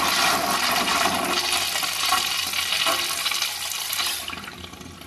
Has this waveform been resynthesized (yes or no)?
no